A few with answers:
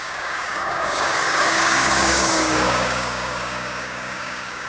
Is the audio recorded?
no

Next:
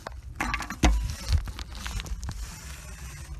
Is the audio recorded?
yes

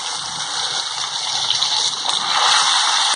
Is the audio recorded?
yes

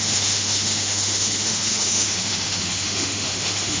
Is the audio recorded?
no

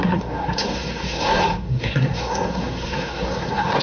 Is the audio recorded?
no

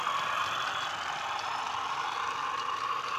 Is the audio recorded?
yes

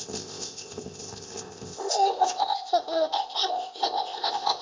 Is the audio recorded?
no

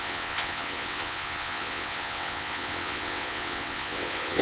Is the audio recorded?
no